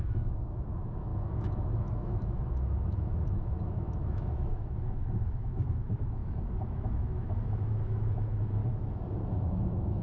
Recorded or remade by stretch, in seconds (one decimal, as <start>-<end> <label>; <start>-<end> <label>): 0.0-8.6 remade; 8.6-9.3 recorded; 9.3-10.0 remade